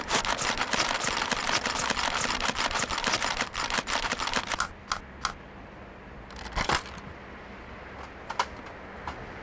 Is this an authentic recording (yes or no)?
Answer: yes